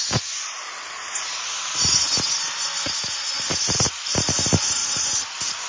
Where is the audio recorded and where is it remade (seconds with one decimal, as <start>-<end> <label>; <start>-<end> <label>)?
0.0-5.7 recorded

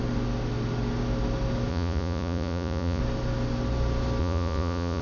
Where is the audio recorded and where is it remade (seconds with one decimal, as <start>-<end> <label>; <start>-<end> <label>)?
0.0-1.7 recorded; 1.7-3.0 remade; 3.0-4.2 recorded; 4.2-5.0 remade

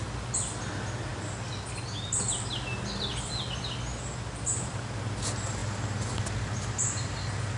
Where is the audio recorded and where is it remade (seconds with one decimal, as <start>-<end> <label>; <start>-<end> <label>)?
0.0-7.6 recorded

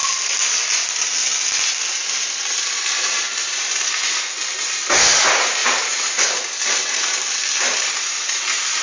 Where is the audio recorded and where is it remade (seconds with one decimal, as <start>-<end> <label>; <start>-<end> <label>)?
0.0-5.6 recorded; 5.6-6.3 remade; 6.3-8.8 recorded

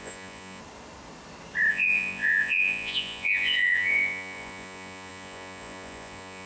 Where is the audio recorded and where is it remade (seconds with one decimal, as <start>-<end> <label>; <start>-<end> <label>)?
0.0-0.6 remade; 0.6-1.7 recorded; 1.7-6.5 remade